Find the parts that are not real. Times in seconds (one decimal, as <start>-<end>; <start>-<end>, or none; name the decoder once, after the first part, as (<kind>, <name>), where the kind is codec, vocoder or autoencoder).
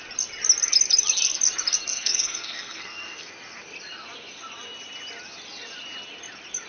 1.9-3.3 (codec, SNAC)